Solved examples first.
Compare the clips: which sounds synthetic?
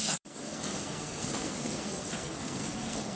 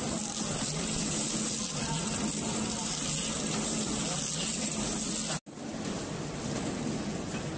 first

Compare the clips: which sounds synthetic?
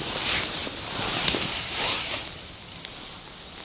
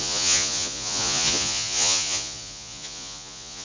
second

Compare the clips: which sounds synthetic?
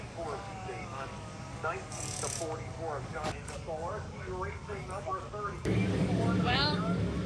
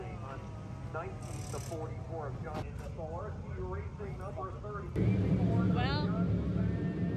first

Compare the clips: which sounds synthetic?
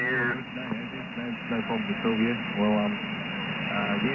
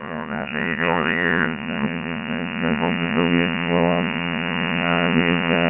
second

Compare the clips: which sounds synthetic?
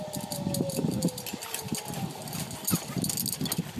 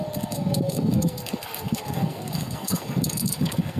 second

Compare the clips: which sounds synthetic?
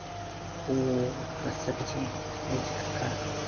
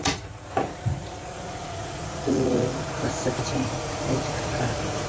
second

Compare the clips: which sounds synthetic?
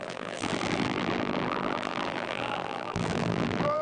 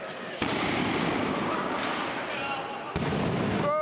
first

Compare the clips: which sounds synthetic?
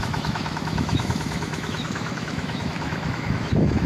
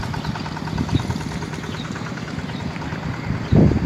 first